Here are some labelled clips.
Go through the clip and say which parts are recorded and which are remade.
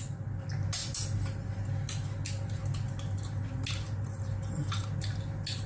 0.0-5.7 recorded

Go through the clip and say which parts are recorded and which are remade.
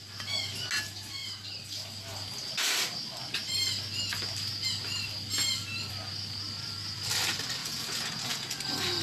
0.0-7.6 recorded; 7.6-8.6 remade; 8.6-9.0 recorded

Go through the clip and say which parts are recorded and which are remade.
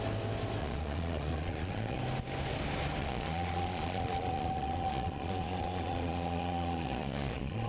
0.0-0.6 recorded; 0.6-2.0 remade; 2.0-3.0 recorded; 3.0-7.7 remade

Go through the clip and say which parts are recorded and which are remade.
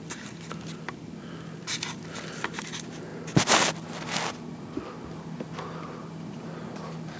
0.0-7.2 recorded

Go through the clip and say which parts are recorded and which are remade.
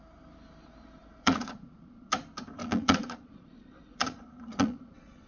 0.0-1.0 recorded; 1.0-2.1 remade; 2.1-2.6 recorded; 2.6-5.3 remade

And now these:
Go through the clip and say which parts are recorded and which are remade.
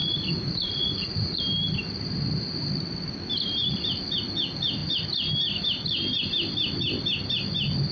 0.0-1.4 remade; 1.4-7.9 recorded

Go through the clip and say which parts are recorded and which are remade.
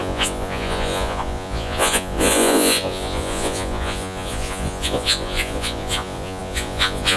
0.0-7.2 remade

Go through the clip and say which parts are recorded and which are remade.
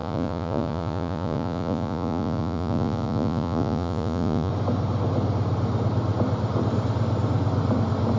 0.0-4.5 remade; 4.5-8.2 recorded